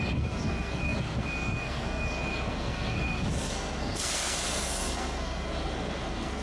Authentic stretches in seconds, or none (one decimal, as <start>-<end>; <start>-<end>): none